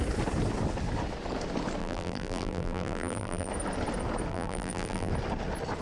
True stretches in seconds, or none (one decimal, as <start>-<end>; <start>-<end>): 0.0-1.8; 3.5-4.3; 5.1-5.8